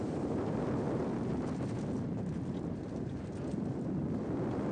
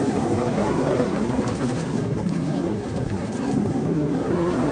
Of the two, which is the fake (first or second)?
second